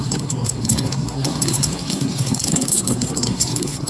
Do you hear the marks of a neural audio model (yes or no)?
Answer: yes